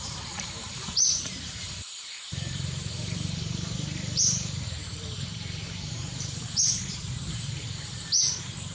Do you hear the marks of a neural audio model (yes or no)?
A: yes